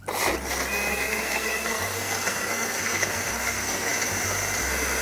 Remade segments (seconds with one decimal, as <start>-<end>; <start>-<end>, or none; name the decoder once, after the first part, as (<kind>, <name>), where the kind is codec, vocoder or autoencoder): 0.9-3.9 (codec, SNAC)